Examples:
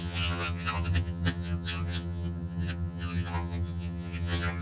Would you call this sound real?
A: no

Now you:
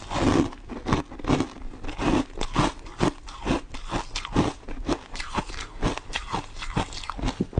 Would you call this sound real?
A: yes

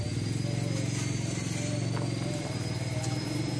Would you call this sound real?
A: yes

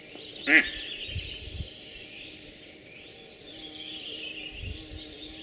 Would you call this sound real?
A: yes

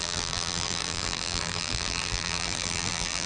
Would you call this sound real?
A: no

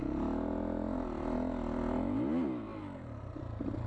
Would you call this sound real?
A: yes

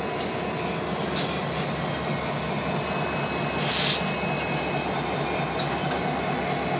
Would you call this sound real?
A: yes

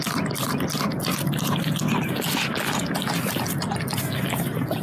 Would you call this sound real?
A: yes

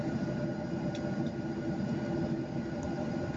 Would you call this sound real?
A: yes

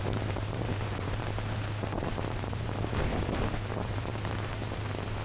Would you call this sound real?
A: no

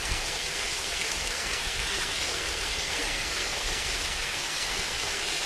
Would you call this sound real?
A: no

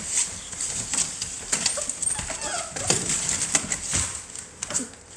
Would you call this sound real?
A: yes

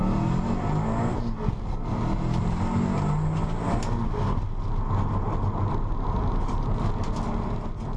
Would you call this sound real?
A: yes